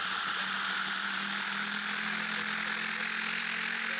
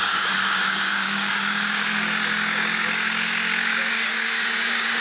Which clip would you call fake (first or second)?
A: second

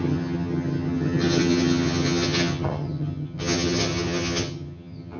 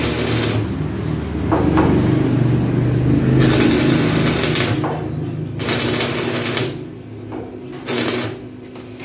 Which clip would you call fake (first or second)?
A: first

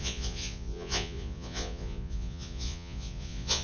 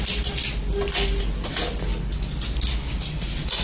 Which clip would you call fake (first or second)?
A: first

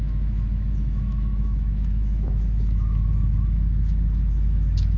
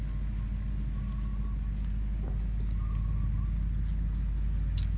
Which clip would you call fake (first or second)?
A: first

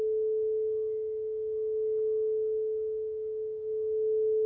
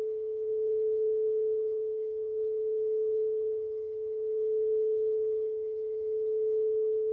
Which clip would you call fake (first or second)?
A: second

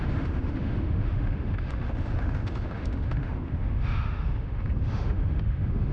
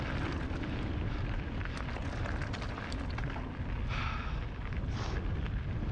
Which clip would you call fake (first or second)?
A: first